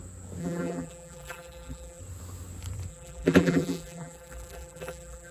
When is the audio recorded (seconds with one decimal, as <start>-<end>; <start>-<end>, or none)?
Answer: 0.0-0.4; 2.0-2.9